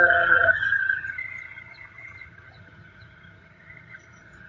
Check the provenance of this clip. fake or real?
fake